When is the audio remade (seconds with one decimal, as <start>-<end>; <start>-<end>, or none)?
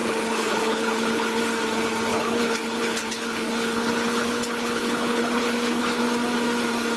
0.0-1.4; 2.1-6.0